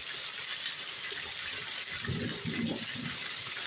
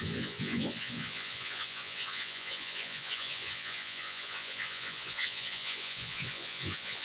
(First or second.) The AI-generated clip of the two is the second